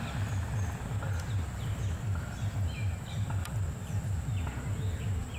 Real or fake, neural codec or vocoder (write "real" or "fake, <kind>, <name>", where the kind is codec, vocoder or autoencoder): real